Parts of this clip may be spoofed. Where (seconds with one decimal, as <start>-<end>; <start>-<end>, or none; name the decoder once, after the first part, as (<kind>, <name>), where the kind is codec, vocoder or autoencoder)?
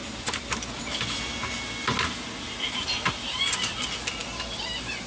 none